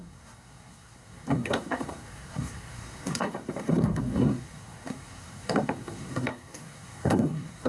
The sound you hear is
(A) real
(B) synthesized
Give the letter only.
B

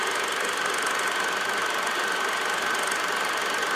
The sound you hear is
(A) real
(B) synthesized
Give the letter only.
A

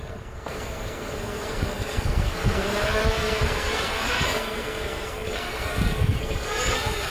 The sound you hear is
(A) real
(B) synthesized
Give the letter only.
B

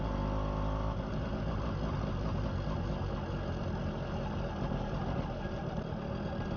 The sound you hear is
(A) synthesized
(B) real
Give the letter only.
B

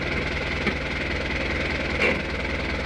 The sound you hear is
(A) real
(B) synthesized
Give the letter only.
A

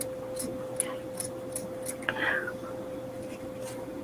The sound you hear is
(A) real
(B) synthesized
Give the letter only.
A